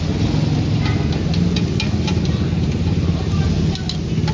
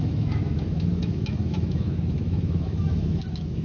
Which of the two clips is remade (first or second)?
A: second